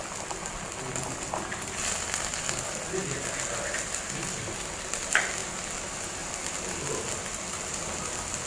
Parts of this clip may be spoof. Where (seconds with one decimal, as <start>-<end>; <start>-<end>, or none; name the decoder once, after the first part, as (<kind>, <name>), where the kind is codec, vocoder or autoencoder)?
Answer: none